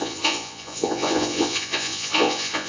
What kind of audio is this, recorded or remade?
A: remade